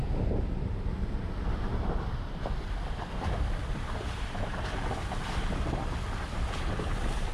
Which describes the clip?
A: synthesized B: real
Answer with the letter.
B